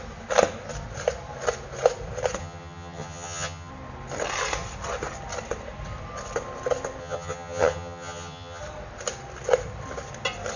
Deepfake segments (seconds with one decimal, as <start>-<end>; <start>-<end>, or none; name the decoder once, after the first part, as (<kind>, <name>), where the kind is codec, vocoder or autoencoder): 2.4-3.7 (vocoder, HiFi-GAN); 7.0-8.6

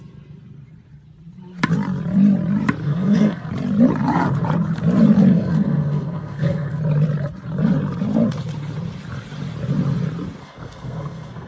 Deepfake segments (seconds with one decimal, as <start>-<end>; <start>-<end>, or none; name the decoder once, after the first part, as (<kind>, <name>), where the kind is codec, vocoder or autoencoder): 2.8-3.5 (codec, SNAC); 5.3-6.8; 10.4-11.5

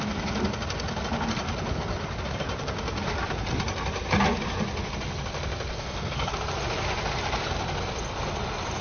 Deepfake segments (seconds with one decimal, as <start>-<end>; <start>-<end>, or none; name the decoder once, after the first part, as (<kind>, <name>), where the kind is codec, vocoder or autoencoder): 5.7-6.3 (codec, SNAC)

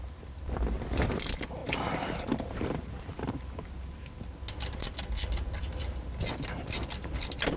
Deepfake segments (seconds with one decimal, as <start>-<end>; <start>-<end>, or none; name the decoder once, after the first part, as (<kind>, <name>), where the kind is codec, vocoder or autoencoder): 1.6-4.0 (vocoder, BigVGAN v2)

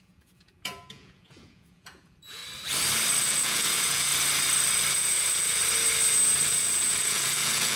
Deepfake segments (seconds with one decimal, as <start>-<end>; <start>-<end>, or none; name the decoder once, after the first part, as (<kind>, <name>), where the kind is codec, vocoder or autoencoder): 0.0-2.4 (vocoder, Vocos); 3.2-4.1; 4.9-5.6; 6.5-7.8